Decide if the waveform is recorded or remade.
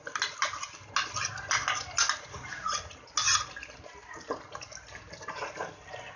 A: recorded